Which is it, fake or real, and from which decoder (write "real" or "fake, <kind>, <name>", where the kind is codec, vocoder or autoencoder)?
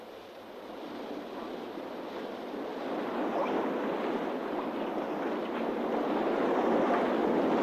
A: real